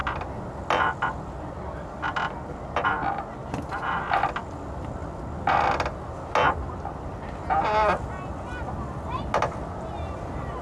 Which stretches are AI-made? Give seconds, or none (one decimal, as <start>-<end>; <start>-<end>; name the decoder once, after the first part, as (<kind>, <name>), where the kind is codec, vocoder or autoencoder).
none